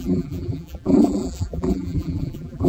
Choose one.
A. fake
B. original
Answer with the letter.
A